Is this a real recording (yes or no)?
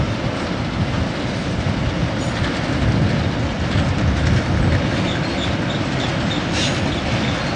yes